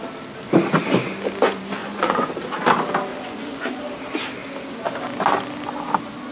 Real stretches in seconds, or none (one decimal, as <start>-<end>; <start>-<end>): 0.0-1.8; 2.3-3.1; 3.8-6.3